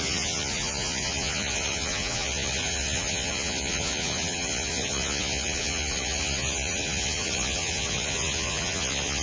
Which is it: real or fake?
fake